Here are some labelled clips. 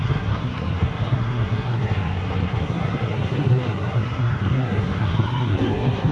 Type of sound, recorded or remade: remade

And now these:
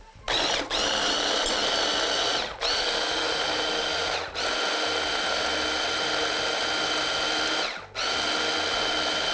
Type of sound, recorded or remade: recorded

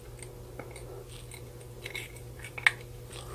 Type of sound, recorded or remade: recorded